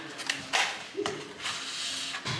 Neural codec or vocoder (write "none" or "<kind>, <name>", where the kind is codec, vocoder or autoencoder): none